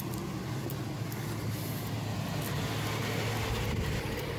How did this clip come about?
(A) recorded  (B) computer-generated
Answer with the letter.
A